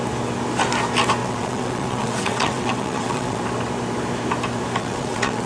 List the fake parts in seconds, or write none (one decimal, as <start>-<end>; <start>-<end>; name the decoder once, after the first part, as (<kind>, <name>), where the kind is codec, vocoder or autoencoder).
1.2-3.4 (vocoder, WaveNeXt); 4.8-5.5